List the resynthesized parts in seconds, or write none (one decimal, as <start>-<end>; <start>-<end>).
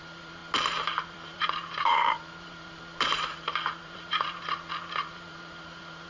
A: 0.0-0.4; 1.0-6.1